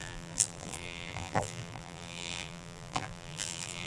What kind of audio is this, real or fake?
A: fake